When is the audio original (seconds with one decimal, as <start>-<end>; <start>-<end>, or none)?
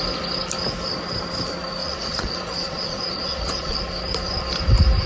0.0-1.8; 3.8-5.1